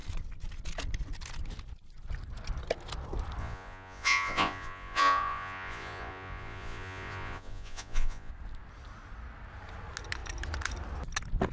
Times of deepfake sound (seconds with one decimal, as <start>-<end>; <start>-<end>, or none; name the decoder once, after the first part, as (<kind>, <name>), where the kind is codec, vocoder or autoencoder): 3.4-8.3 (vocoder, Vocos)